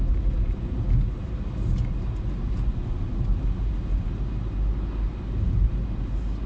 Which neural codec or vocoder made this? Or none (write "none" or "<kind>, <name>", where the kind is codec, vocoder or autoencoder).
none